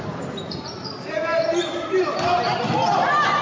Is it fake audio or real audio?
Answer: fake